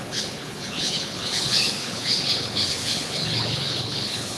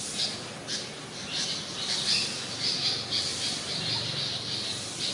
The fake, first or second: first